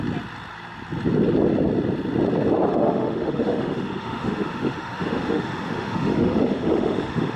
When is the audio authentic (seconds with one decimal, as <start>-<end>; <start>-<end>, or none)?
0.0-2.7